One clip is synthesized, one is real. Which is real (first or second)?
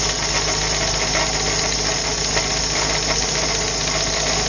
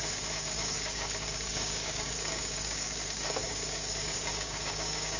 first